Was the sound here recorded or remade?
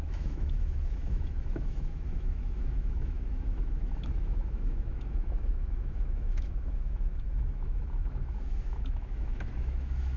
remade